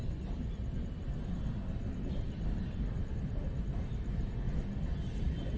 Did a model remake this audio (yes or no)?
no